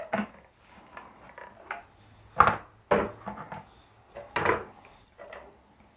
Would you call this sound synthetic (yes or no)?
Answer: no